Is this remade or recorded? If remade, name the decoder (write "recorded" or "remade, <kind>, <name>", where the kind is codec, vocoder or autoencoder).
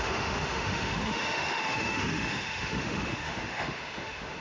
remade, autoencoder, DAC-VAE